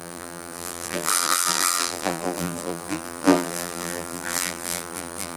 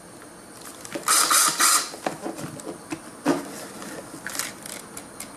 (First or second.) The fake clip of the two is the first